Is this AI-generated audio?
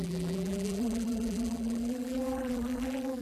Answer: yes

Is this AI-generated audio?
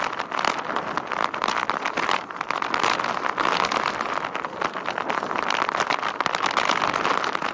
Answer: no